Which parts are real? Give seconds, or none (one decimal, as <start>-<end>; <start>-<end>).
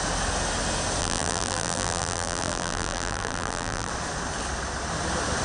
0.0-1.0; 3.9-5.4